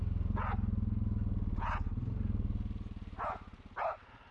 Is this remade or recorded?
recorded